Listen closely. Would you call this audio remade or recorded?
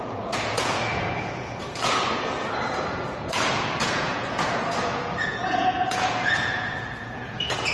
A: remade